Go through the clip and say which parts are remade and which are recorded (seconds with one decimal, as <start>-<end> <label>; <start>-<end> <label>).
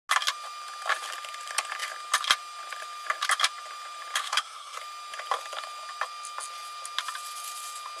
0.0-4.2 recorded; 4.2-4.8 remade; 4.8-8.0 recorded